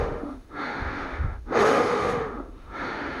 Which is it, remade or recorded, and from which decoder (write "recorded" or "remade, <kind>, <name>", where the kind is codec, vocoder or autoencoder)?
remade, autoencoder, DAC-VAE